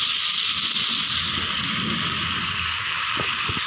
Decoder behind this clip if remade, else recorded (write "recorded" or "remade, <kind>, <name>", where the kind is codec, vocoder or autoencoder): recorded